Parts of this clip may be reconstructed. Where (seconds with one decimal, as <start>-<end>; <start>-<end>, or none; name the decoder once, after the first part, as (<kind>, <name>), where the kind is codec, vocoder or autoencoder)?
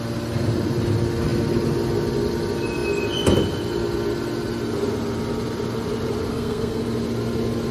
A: 6.3-6.8 (codec, SNAC)